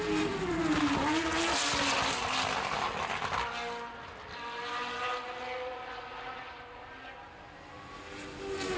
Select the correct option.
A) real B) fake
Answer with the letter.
A